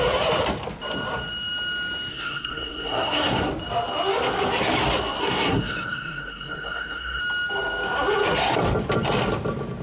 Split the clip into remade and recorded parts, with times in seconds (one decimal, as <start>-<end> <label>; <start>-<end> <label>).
0.0-2.1 recorded; 2.1-3.5 remade; 3.5-5.2 recorded; 5.2-7.2 remade; 7.2-9.8 recorded